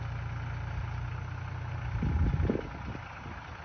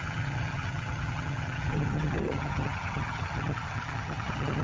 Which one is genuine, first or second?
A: first